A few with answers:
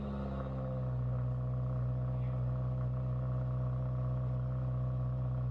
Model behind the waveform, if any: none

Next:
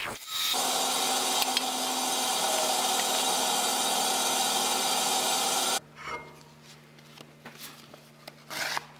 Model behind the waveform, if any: none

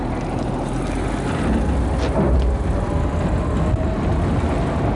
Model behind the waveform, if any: none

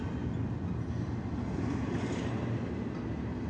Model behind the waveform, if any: none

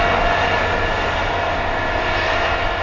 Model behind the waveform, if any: none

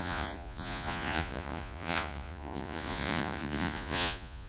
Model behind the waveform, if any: vocoder, Vocos